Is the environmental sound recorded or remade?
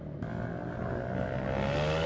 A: recorded